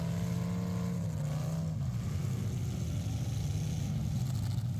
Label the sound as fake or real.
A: real